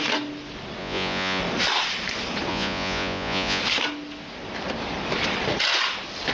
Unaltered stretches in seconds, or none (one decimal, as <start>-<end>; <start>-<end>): 0.0-0.8; 1.4-2.5; 3.6-6.3